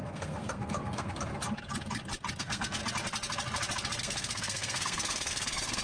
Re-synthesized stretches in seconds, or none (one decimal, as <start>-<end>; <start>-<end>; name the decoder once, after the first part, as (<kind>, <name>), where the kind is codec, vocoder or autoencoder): 0.0-1.3 (codec, SNAC); 2.4-2.8; 4.0-5.8